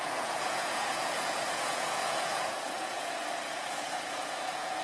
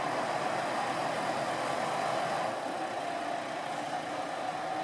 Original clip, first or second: second